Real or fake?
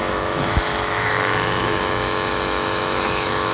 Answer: fake